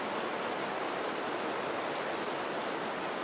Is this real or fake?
real